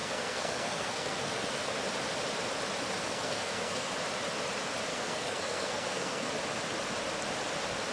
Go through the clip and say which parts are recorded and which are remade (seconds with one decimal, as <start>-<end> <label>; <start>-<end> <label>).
0.0-1.7 remade; 1.7-3.0 recorded; 3.0-3.9 remade; 3.9-4.9 recorded; 4.9-6.3 remade; 6.3-7.9 recorded

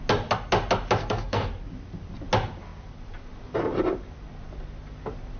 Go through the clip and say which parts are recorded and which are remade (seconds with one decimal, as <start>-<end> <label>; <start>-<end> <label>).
0.0-1.0 recorded; 1.0-1.5 remade; 1.5-5.4 recorded

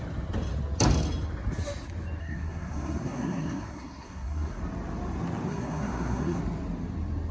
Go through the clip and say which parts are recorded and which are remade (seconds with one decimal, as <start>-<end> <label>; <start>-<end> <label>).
0.0-2.2 recorded; 2.2-4.6 remade; 4.6-5.5 recorded; 5.5-6.4 remade; 6.4-7.3 recorded

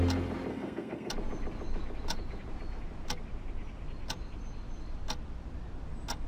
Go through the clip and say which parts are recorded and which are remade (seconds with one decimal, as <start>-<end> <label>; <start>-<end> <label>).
0.0-0.5 recorded; 0.5-1.1 remade; 1.1-6.3 recorded

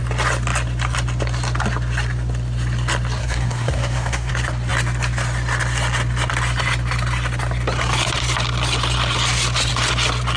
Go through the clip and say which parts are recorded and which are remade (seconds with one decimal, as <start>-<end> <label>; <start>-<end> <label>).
0.0-3.2 recorded; 3.2-4.3 remade; 4.3-10.4 recorded

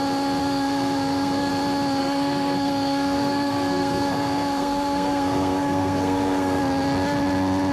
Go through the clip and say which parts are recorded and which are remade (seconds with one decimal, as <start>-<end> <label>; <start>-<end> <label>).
0.0-0.4 recorded; 0.4-1.5 remade; 1.5-2.0 recorded; 2.0-6.6 remade; 6.6-7.7 recorded

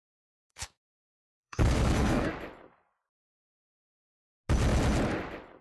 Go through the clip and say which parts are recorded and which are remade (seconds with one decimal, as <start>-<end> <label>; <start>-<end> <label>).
0.0-0.4 recorded; 0.4-2.3 remade; 2.3-5.6 recorded